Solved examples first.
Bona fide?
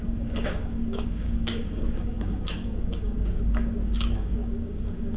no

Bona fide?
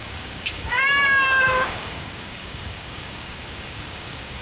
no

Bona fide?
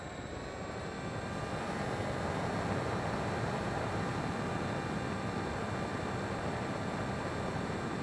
yes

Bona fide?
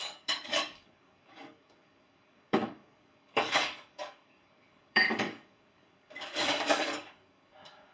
no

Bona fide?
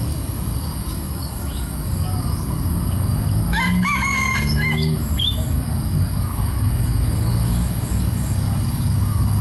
no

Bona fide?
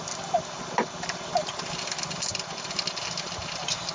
yes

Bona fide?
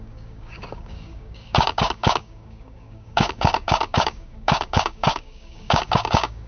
no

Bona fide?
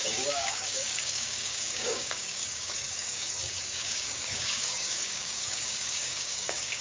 no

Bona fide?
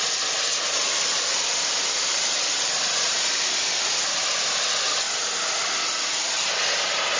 yes